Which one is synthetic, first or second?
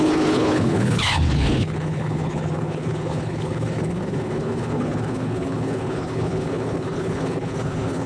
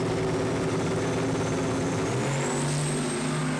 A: first